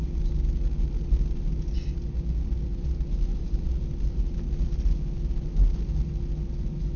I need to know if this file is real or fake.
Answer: real